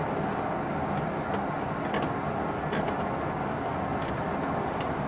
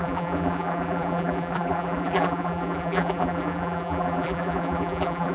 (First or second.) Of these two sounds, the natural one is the first